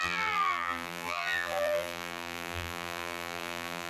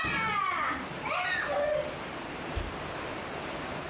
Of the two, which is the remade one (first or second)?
first